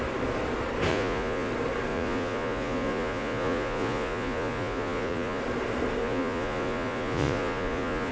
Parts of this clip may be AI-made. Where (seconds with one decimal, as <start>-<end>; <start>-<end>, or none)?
0.9-1.5; 1.9-5.4; 6.0-8.1